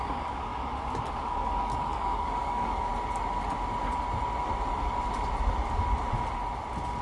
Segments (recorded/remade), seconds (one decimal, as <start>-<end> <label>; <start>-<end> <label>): 0.0-0.5 remade; 0.5-1.1 recorded; 1.1-2.9 remade; 2.9-7.0 recorded